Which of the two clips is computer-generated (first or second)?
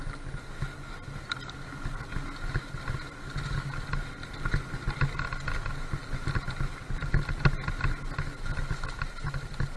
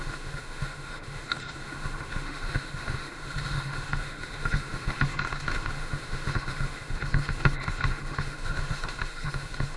second